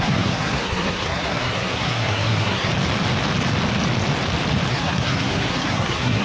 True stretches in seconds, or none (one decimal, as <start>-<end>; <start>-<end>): 2.7-4.7